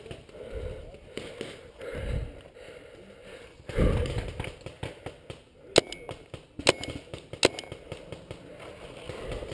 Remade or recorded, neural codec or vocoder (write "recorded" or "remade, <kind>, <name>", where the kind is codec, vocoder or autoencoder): recorded